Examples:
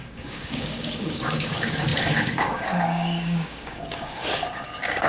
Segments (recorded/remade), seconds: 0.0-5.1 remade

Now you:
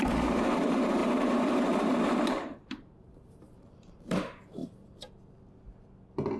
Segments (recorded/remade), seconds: 0.0-4.6 remade; 4.6-6.4 recorded

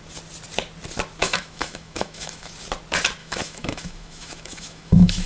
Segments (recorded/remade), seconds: 0.0-1.2 recorded; 1.2-2.5 remade; 2.5-3.2 recorded; 3.2-5.3 remade

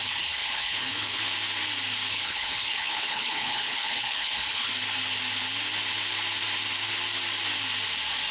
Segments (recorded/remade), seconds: 0.0-1.2 remade; 1.2-2.1 recorded; 2.1-4.7 remade; 4.7-8.3 recorded